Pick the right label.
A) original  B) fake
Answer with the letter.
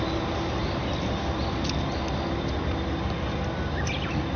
A